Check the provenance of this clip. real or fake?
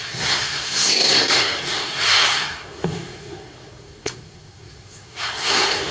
fake